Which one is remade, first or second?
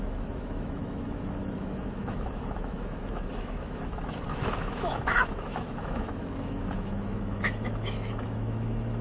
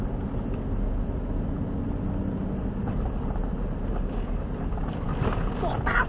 first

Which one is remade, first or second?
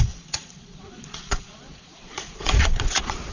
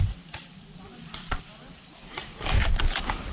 first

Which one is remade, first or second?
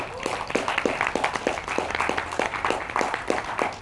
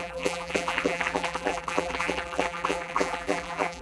second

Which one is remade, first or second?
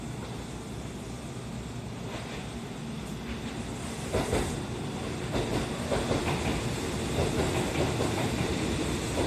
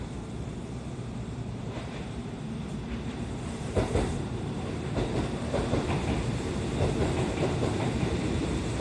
second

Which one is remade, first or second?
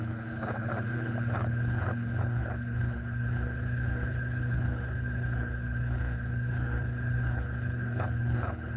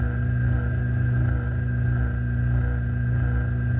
first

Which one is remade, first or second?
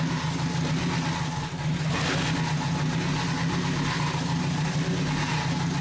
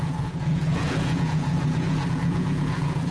second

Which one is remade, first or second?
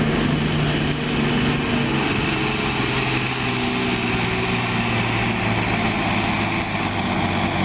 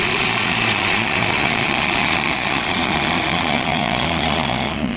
second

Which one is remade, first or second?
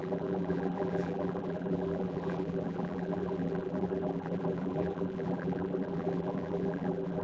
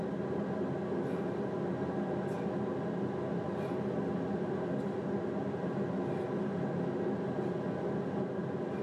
first